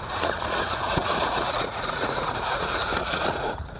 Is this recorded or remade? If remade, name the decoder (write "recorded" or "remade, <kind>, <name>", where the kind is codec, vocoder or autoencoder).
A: remade, vocoder, Vocos